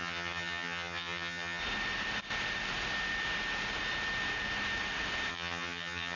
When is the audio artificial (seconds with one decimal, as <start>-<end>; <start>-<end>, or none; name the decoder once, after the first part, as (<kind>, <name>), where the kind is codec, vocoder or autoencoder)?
0.0-1.6 (vocoder, HiFi-GAN); 5.3-6.2